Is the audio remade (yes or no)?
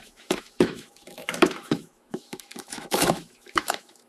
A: yes